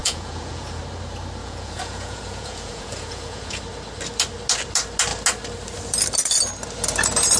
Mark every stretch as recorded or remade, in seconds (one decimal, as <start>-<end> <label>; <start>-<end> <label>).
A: 0.0-0.8 remade; 0.8-1.4 recorded; 1.4-3.6 remade; 3.6-7.4 recorded